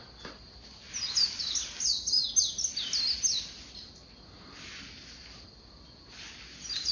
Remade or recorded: recorded